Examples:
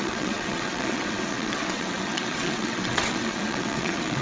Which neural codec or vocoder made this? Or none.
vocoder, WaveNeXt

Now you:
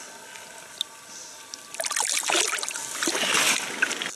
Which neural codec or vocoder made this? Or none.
none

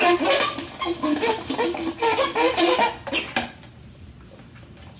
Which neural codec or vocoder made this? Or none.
none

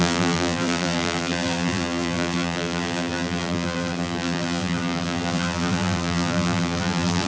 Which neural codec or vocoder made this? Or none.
vocoder, BigVGAN v2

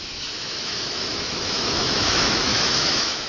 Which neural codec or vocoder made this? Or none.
autoencoder, DAC-VAE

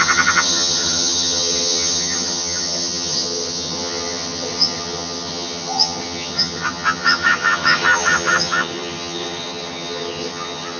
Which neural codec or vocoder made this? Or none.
vocoder, HiFi-GAN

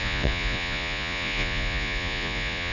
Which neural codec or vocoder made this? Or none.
vocoder, Vocos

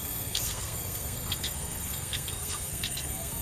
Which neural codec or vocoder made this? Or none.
codec, SNAC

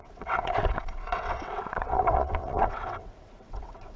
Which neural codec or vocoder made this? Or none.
vocoder, WaveNeXt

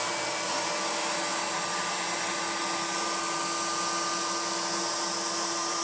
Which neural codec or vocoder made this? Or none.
none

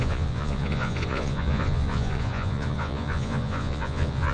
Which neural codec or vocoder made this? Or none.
vocoder, Vocos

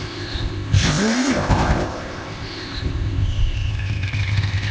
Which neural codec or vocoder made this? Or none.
codec, ZipCodec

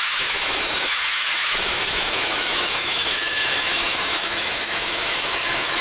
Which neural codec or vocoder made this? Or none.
autoencoder, DAC-VAE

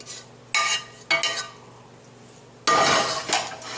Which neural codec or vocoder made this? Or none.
none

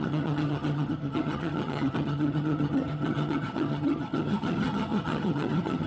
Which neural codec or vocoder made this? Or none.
vocoder, HiFi-GAN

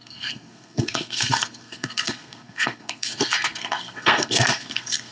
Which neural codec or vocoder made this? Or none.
codec, SNAC